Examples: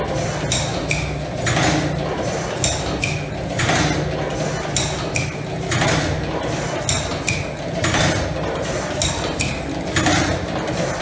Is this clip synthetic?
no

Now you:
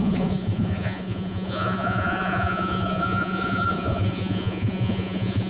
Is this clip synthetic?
yes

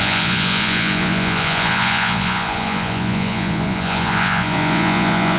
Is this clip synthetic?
yes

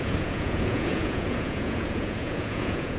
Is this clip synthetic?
yes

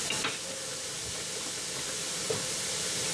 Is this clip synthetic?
no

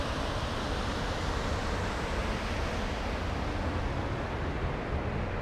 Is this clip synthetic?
no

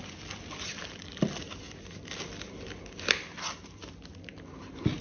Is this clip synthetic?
no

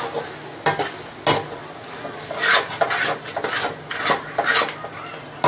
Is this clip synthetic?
no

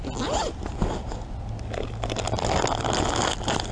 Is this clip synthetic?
no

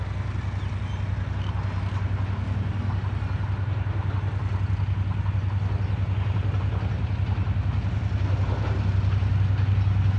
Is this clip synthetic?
no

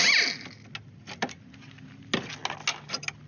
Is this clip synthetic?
no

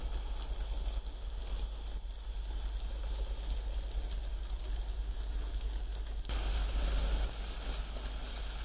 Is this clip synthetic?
no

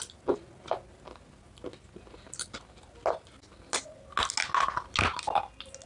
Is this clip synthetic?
no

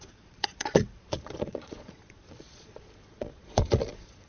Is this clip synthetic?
yes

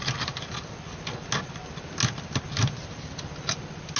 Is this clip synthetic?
no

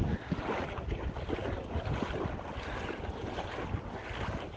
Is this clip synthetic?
no